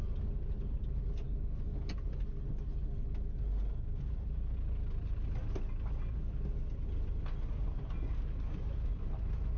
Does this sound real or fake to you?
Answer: real